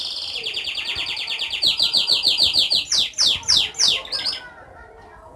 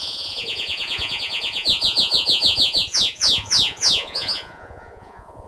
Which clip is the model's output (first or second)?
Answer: second